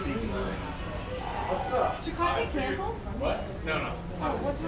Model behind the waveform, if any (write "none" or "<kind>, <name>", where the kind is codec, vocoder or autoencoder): none